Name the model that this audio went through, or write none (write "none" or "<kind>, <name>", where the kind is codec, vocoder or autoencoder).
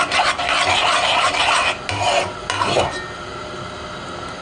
none